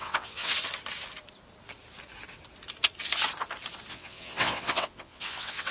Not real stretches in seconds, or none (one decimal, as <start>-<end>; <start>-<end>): 0.0-0.5; 3.9-5.7